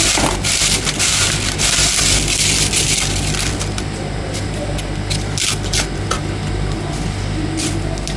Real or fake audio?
real